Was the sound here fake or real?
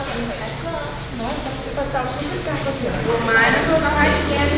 real